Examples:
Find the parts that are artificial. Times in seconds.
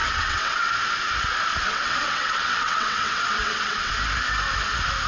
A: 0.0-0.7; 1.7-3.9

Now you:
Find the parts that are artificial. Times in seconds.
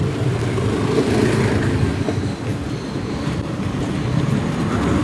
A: 2.5-3.9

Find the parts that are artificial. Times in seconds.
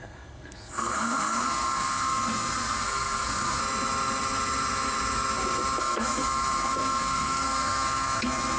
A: 0.0-3.6; 5.8-8.6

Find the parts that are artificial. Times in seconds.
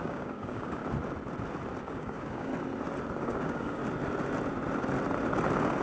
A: 0.0-0.8; 1.8-2.5; 3.2-3.8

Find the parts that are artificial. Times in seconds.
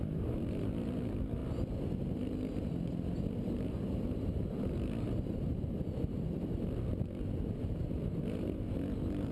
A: 0.0-1.4; 2.0-9.3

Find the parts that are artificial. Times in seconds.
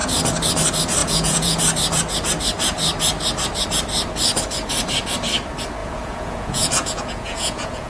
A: 1.0-1.6; 5.8-7.9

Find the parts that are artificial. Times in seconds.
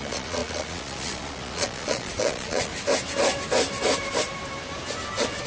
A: 0.0-2.7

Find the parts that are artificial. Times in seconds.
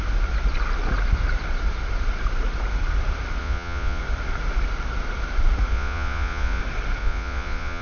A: 3.4-4.0; 5.7-6.6; 7.0-7.8